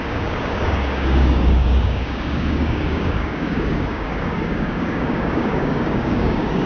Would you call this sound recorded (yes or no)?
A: no